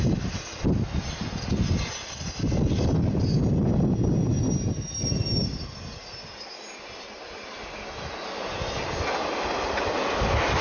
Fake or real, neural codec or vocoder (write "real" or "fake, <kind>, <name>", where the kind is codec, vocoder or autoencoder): real